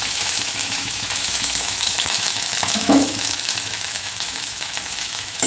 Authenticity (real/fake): fake